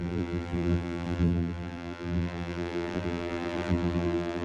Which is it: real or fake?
fake